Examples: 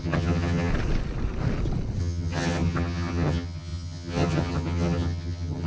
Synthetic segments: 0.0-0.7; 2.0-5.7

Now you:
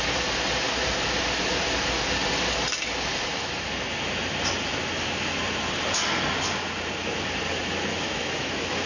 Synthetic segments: 7.9-8.9